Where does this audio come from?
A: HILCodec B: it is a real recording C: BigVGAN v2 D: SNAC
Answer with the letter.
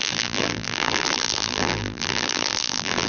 C